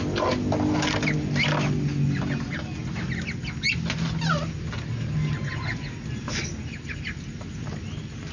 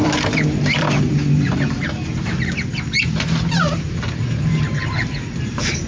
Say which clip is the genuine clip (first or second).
first